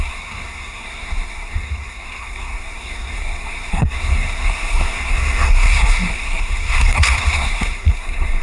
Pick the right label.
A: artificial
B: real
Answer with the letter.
A